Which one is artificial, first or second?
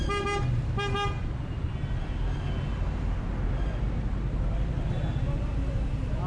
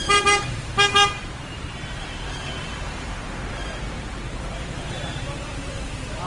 second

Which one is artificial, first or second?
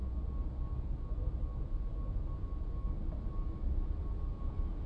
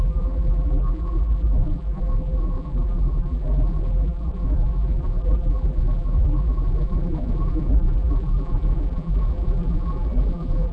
second